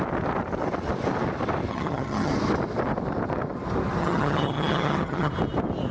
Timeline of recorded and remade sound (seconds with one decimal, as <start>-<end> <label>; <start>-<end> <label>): 0.0-1.7 recorded; 1.7-2.3 remade; 2.3-4.0 recorded; 4.0-5.3 remade; 5.3-5.9 recorded

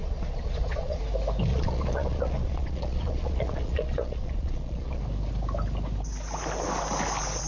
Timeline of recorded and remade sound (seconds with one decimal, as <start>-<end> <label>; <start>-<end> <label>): 0.0-1.0 remade; 1.0-1.5 recorded; 1.5-5.0 remade; 5.0-7.5 recorded